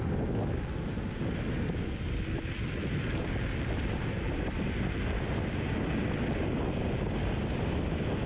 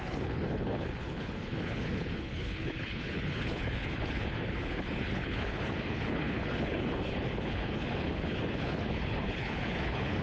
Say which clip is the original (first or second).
first